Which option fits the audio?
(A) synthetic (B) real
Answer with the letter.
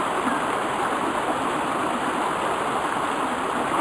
B